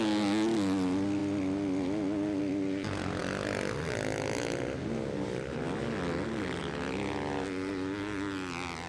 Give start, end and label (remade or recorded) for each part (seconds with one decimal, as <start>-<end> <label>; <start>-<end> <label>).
0.0-8.9 recorded